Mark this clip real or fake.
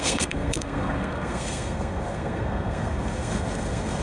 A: fake